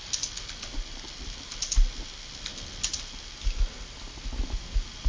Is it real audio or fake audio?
real